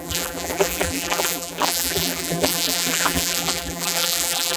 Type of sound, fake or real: fake